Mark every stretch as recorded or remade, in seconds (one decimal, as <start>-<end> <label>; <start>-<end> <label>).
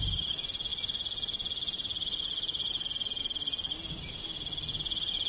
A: 0.0-5.3 recorded